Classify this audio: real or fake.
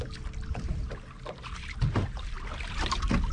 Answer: real